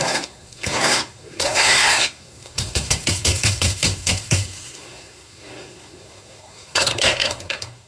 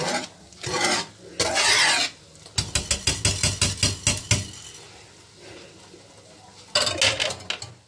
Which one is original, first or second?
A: second